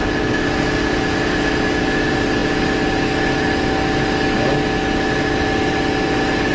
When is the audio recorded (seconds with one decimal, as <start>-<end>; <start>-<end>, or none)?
0.0-6.5